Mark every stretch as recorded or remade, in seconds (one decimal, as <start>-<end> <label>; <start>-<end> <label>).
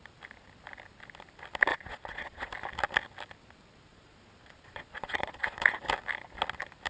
0.0-1.7 recorded; 1.7-2.5 remade; 2.5-3.9 recorded; 3.9-5.8 remade; 5.8-6.9 recorded